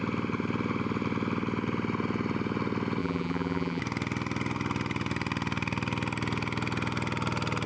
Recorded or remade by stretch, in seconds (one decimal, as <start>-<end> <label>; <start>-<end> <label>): 0.0-3.0 recorded; 3.0-3.8 remade; 3.8-7.7 recorded